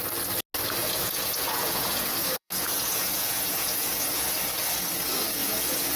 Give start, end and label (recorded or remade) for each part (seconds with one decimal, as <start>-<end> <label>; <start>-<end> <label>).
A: 0.0-0.8 recorded; 0.8-4.4 remade; 4.4-5.4 recorded; 5.4-6.0 remade